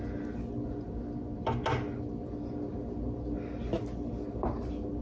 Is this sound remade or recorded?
recorded